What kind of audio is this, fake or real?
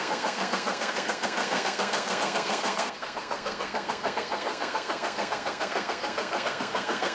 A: fake